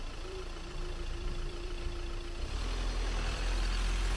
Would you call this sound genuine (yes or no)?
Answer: no